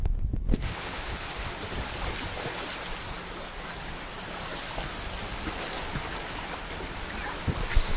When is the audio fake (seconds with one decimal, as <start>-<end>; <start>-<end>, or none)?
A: 0.5-1.5